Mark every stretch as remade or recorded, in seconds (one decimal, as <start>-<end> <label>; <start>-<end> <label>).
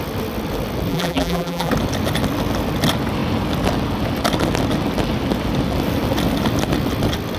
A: 0.0-0.9 recorded; 0.9-1.7 remade; 1.7-7.4 recorded